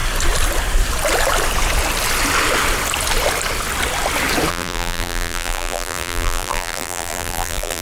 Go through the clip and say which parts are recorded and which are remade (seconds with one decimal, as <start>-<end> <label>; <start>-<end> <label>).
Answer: 0.0-4.5 recorded; 4.5-7.8 remade